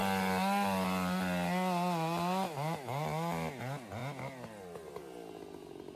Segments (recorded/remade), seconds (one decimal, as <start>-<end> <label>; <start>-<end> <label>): 0.0-6.0 recorded